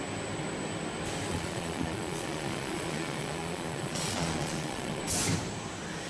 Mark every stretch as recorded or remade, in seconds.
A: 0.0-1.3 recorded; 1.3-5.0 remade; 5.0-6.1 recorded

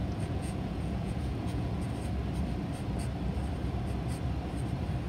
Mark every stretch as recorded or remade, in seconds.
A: 0.0-1.9 remade; 1.9-5.1 recorded

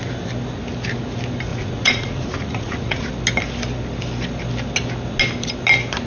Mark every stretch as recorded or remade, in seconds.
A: 0.0-1.5 recorded; 1.5-3.1 remade; 3.1-6.1 recorded

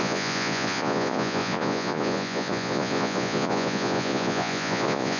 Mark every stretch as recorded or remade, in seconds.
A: 0.0-5.2 remade

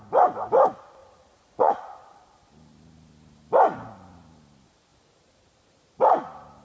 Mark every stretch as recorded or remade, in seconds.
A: 0.0-1.0 recorded; 1.0-1.7 remade; 1.7-6.6 recorded

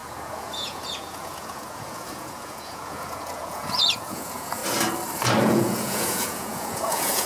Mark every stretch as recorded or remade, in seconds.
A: 0.0-4.6 remade; 4.6-5.4 recorded; 5.4-7.3 remade

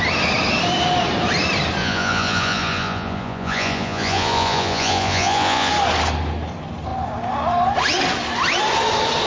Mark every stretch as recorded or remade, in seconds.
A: 0.0-1.8 recorded; 1.8-5.7 remade; 5.7-9.3 recorded

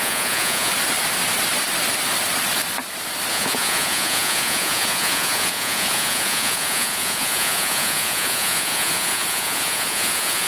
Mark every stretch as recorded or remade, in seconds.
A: 0.0-0.7 remade; 0.7-3.3 recorded; 3.3-10.5 remade